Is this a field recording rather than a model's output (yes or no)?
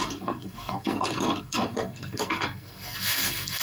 no